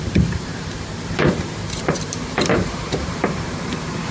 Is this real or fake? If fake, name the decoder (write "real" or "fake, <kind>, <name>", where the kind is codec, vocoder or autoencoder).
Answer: fake, vocoder, BigVGAN v2